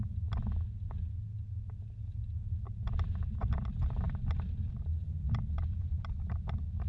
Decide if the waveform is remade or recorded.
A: recorded